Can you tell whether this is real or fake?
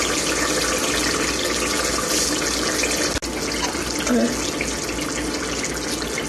real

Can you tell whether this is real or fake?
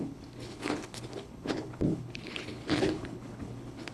fake